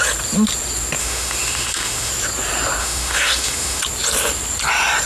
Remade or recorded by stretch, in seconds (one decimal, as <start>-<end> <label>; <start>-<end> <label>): 0.0-1.0 recorded; 1.0-2.1 remade; 2.1-2.8 recorded; 2.8-3.8 remade; 3.8-5.1 recorded